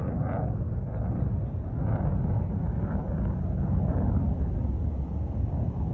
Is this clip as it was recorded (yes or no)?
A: yes